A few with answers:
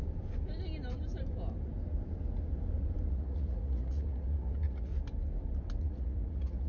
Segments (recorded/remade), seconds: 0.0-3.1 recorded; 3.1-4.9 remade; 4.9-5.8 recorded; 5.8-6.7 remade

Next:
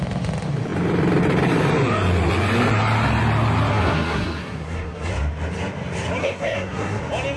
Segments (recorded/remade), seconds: 0.0-3.7 recorded; 3.7-5.1 remade; 5.1-6.2 recorded; 6.2-7.0 remade; 7.0-7.4 recorded

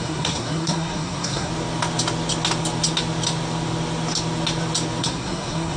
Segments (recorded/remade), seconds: 0.0-1.5 remade; 1.5-5.0 recorded; 5.0-5.8 remade

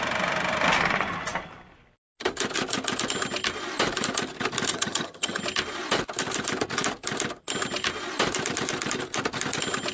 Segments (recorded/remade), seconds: 0.0-4.7 recorded; 4.7-5.4 remade; 5.4-9.9 recorded

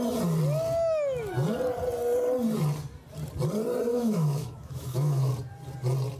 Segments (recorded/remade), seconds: 0.0-3.9 recorded; 3.9-5.3 remade; 5.3-6.2 recorded

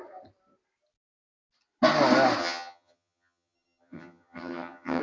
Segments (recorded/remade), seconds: 0.0-2.4 recorded; 2.4-5.0 remade

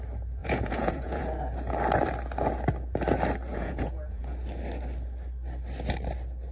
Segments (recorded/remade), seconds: 0.0-0.4 recorded; 0.4-1.2 remade; 1.2-3.5 recorded; 3.5-4.2 remade; 4.2-6.5 recorded